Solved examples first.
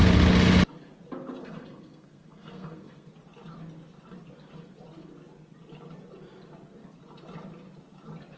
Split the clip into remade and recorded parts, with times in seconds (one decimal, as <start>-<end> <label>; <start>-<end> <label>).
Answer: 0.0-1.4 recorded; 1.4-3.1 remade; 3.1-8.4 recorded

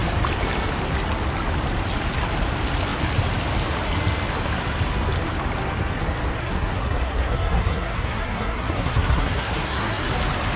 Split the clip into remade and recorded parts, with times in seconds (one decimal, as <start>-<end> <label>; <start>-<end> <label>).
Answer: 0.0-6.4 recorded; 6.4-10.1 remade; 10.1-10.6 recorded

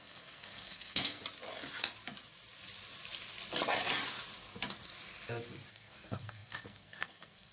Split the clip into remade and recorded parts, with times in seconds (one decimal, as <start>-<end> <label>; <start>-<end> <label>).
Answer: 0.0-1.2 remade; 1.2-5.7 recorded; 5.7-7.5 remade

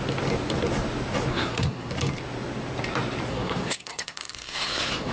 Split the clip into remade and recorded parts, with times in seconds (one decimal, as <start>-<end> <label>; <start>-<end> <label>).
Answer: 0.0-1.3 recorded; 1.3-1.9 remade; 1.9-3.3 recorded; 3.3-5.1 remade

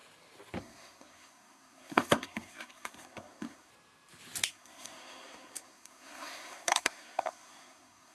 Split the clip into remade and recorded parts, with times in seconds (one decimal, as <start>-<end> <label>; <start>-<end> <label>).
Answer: 0.0-0.6 recorded; 0.6-3.7 remade; 3.7-4.5 recorded; 4.5-8.1 remade